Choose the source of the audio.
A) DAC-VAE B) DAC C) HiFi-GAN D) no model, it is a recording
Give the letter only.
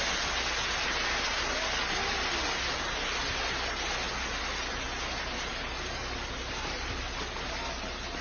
D